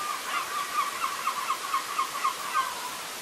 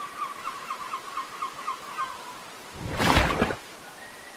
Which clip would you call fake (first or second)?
second